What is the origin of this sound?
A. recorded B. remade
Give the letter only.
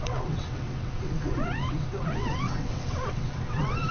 B